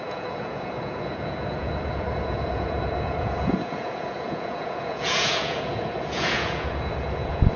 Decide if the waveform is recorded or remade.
remade